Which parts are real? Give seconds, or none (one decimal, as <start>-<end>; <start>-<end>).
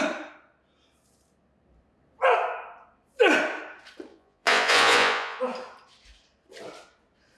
0.0-4.1; 5.4-7.4